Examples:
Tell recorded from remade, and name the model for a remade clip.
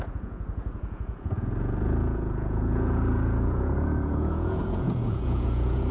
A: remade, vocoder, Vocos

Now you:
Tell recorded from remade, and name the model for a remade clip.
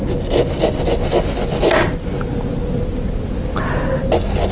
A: recorded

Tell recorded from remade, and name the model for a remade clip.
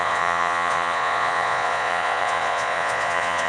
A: remade, vocoder, Vocos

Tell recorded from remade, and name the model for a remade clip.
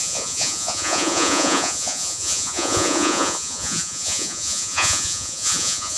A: remade, vocoder, Vocos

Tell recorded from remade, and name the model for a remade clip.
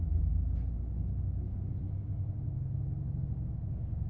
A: recorded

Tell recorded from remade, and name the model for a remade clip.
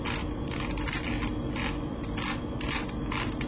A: recorded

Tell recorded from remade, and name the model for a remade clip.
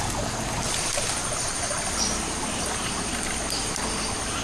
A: recorded